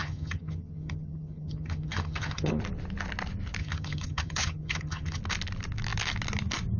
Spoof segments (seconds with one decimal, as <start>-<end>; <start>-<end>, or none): 0.0-2.6; 3.6-5.2